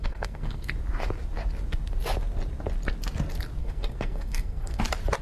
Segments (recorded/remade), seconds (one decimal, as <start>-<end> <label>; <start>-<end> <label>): 0.0-0.7 remade; 0.7-3.6 recorded; 3.6-4.8 remade; 4.8-5.2 recorded